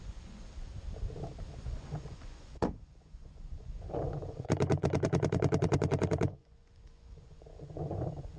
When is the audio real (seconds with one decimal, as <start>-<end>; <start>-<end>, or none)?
0.7-1.6